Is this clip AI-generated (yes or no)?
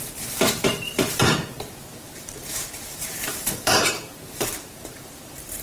yes